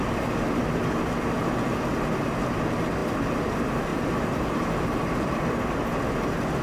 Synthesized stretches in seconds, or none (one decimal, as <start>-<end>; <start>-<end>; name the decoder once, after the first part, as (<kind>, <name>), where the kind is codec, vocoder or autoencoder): 3.9-5.4 (vocoder, BigVGAN v2)